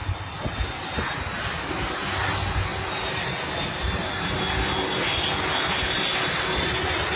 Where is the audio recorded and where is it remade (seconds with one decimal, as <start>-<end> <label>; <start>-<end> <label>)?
0.0-7.2 recorded